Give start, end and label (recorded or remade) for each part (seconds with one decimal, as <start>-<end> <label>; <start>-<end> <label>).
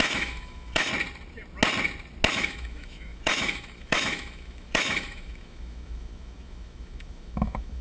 0.0-0.9 remade; 0.9-2.3 recorded; 2.3-7.8 remade